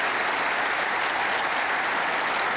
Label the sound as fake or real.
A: real